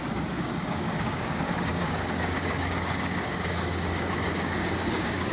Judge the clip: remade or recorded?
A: remade